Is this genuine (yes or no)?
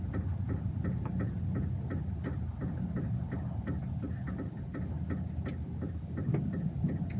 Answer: yes